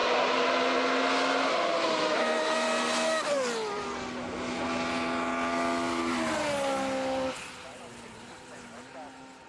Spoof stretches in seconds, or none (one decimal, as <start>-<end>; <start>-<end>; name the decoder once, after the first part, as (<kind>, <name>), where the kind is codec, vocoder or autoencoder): none